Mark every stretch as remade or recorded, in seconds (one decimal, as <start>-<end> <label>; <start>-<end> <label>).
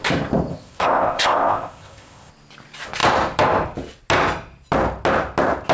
0.0-0.5 recorded; 0.5-2.3 remade; 2.3-5.7 recorded